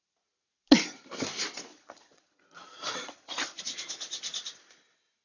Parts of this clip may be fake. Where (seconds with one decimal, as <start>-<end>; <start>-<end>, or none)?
1.7-3.6